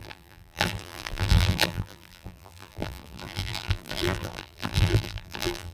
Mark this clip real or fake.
fake